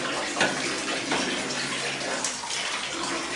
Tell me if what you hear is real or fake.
real